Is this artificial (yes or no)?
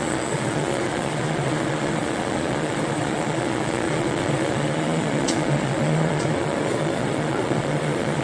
yes